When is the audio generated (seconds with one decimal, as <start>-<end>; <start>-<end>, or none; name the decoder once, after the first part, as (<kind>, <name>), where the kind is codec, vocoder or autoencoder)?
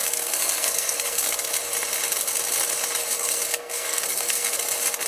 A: 0.0-1.5 (codec, SNAC); 3.0-4.6